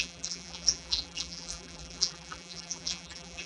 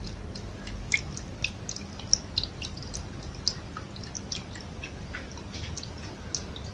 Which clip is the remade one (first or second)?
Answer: first